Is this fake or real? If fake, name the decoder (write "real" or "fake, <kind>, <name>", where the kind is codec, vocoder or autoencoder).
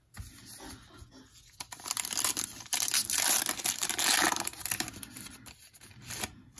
real